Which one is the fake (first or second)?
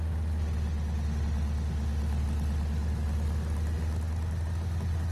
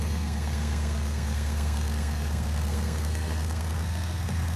second